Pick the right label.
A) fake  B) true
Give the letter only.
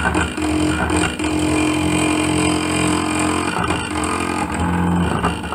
B